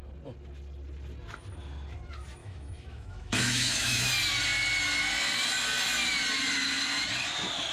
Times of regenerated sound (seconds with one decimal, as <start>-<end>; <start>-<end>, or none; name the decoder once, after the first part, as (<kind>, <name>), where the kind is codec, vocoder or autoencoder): 2.4-4.1 (autoencoder, DAC-VAE)